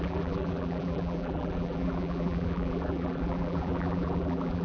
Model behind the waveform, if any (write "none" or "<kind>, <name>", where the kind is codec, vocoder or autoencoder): vocoder, BigVGAN v2